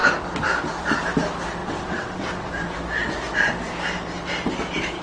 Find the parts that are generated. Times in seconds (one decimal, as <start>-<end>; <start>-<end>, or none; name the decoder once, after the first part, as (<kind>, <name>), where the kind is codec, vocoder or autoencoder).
1.6-2.5 (vocoder, WaveNeXt)